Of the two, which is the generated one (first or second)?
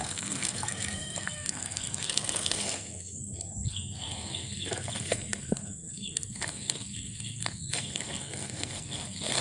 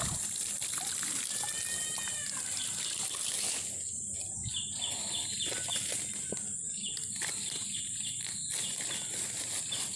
first